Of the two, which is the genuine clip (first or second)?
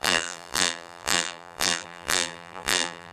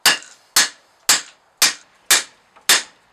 second